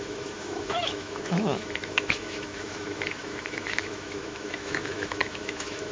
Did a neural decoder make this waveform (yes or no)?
yes